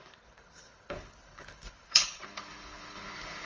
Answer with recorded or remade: remade